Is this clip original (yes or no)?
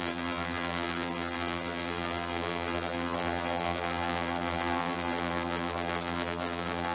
no